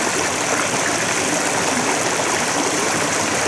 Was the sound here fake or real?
real